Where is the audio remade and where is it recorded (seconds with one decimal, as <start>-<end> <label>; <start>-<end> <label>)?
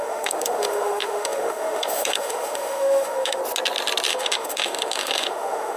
0.0-3.4 remade; 3.4-4.1 recorded; 4.1-5.8 remade